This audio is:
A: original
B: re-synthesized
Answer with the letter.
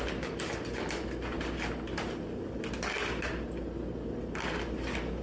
A